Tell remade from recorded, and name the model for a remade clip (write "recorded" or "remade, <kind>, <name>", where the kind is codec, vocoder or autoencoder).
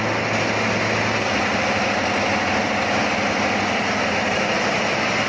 recorded